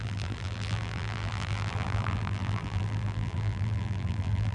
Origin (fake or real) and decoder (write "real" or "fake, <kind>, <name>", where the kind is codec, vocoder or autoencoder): fake, vocoder, BigVGAN v2